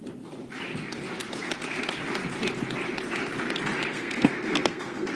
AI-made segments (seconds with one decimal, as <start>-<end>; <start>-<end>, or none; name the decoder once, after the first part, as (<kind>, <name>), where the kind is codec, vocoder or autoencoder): 3.9-5.1 (codec, SNAC)